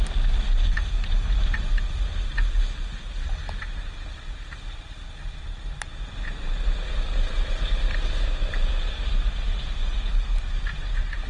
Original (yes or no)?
yes